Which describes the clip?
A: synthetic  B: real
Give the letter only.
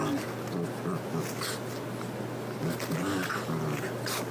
B